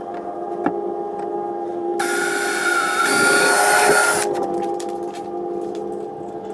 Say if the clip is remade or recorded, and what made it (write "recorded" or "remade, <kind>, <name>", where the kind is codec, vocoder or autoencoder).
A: recorded